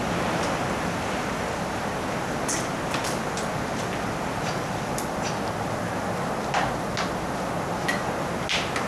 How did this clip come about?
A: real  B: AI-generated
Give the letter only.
A